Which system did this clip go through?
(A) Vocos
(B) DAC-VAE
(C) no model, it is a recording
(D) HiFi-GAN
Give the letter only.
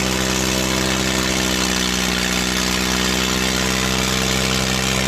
C